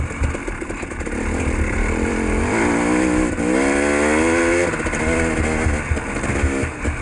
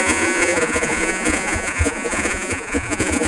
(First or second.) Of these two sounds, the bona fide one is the first